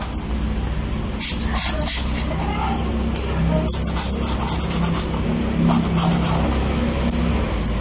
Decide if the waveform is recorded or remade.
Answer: recorded